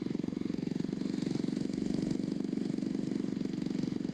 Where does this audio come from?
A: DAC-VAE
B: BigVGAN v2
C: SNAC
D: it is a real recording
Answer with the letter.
A